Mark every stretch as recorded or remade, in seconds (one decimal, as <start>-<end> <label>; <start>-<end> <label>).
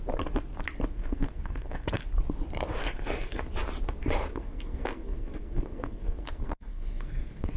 0.0-0.9 recorded; 0.9-2.0 remade; 2.0-2.8 recorded; 2.8-3.4 remade; 3.4-4.3 recorded; 4.3-7.6 remade